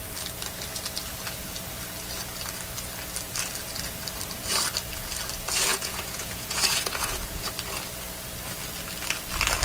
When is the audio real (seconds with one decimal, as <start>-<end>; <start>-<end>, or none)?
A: 0.0-5.7; 7.5-9.6